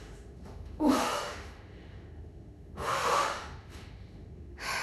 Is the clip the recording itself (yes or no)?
no